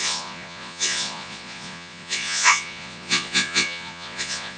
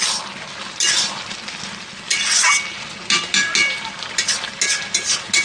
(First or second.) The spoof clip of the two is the first